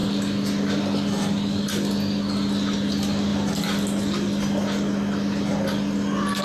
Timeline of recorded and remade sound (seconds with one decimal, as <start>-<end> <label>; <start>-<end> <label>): 0.0-6.4 recorded